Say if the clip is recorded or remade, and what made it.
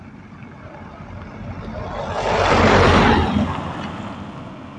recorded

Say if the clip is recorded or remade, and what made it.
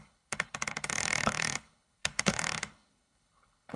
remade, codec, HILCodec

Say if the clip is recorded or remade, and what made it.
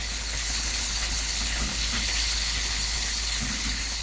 remade, codec, HILCodec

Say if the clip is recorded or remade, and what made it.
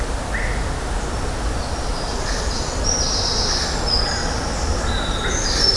recorded